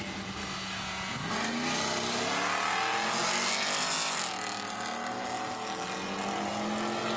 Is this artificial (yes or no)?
no